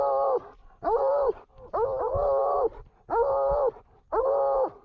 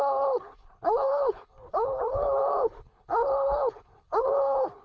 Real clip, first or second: first